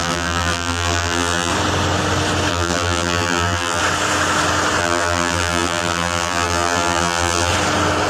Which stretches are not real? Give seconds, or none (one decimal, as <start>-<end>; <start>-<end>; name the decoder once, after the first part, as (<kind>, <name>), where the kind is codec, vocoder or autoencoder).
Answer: 0.0-1.5 (vocoder, BigVGAN v2); 2.5-3.8; 4.8-7.5